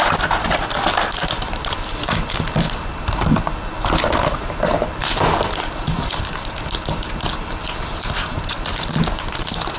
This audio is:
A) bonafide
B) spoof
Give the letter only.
A